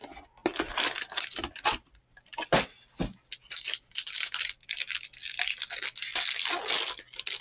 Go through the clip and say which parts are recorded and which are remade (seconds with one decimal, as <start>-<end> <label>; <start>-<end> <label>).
0.0-0.4 recorded; 0.4-4.8 remade; 4.8-7.4 recorded